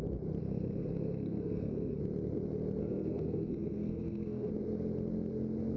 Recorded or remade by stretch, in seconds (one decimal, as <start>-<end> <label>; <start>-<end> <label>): 0.0-0.4 recorded; 0.4-2.0 remade; 2.0-2.8 recorded; 2.8-4.5 remade; 4.5-5.8 recorded